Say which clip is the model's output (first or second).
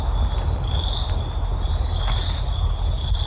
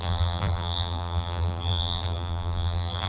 second